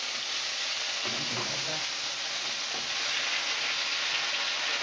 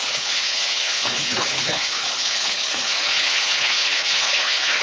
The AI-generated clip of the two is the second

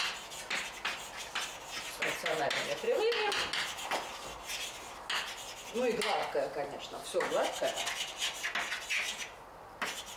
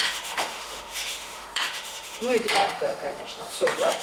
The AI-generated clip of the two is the second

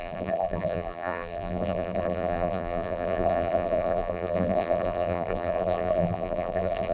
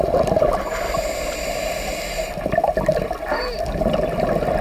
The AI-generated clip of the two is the first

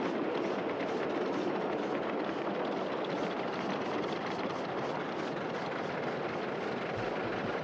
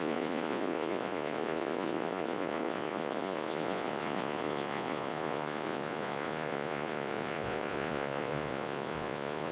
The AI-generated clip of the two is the second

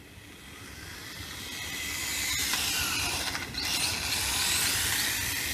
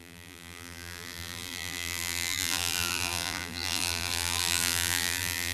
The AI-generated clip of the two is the second